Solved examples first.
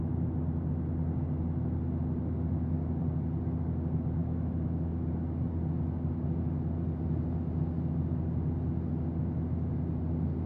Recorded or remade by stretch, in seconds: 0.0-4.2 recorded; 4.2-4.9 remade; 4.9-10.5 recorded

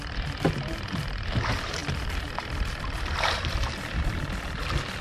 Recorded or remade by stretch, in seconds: 0.0-5.0 recorded

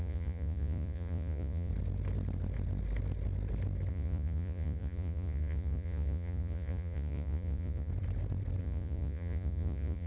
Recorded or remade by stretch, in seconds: 0.0-1.7 remade; 1.7-3.9 recorded; 3.9-7.9 remade; 7.9-8.6 recorded; 8.6-10.1 remade

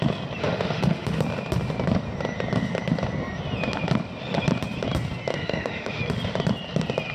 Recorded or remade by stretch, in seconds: 0.0-0.4 recorded; 0.4-1.2 remade; 1.2-5.3 recorded; 5.3-6.0 remade; 6.0-7.1 recorded

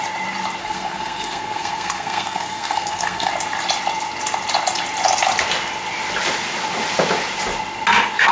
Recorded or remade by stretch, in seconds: 0.0-0.6 recorded; 0.6-3.3 remade; 3.3-8.3 recorded

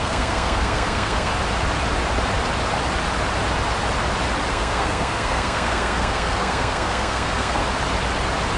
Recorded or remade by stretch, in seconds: 0.0-1.3 remade; 1.3-4.5 recorded; 4.5-7.6 remade; 7.6-8.6 recorded

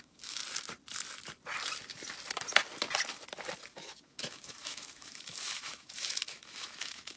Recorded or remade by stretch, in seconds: 0.0-0.4 remade; 0.4-3.7 recorded; 3.7-7.2 remade